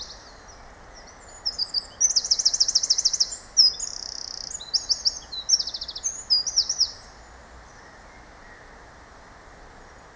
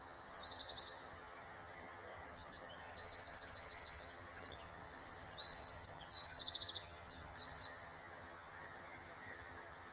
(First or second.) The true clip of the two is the first